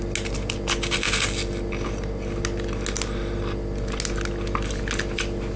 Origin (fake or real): real